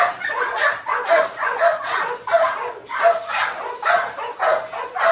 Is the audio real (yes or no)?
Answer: yes